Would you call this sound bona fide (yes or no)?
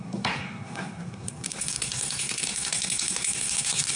no